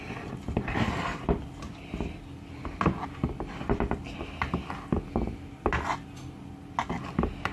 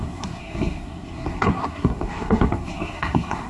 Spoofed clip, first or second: second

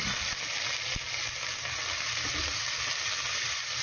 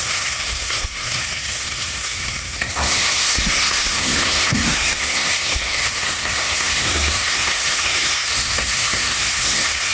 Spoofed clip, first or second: second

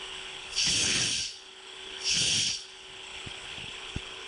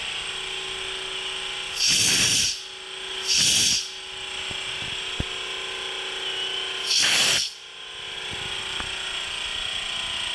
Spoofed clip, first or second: first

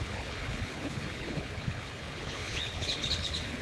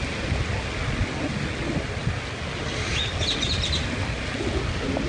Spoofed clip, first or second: first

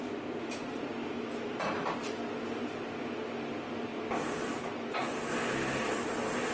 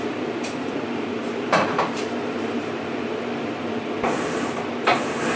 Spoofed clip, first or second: second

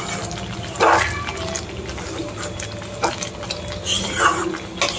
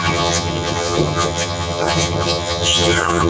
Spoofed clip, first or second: second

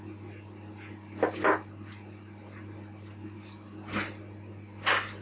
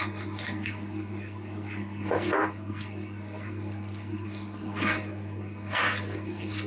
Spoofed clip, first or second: second